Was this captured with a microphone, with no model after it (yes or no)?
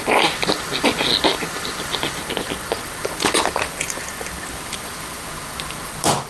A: yes